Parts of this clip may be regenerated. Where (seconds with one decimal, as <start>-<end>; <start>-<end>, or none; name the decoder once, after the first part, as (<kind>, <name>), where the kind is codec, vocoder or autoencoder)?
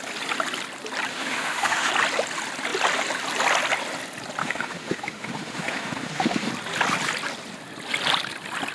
1.1-1.9 (autoencoder, DAC-VAE); 4.4-6.5